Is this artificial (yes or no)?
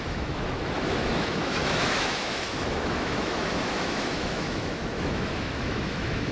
yes